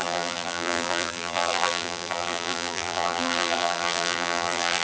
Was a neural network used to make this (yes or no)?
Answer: yes